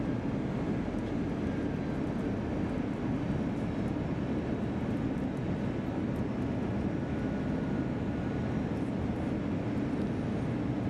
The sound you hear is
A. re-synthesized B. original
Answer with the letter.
B